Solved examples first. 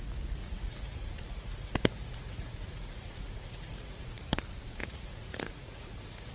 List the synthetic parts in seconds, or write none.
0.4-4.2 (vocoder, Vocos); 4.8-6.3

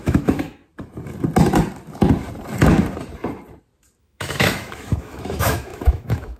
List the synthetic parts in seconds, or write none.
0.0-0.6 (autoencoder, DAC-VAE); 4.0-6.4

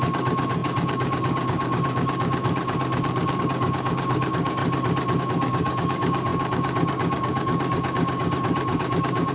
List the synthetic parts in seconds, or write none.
0.0-4.6 (codec, DAC); 5.2-9.3

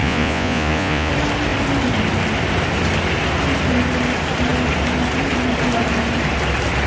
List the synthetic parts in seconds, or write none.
0.0-1.1 (vocoder, Vocos)